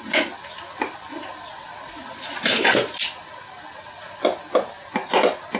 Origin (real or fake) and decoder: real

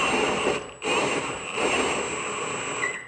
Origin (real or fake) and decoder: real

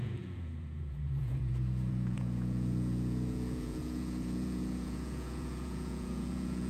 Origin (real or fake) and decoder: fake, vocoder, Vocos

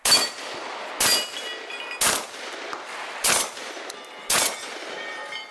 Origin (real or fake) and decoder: real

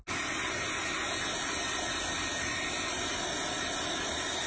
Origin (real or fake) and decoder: real